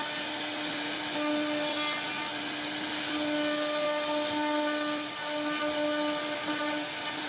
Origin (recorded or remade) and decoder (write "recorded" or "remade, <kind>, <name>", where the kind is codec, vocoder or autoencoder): recorded